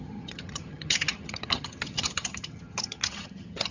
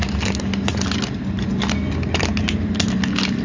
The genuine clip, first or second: second